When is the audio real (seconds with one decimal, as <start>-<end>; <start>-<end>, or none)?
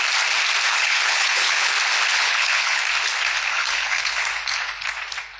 0.0-0.7; 1.7-2.1; 2.8-3.5; 4.2-5.4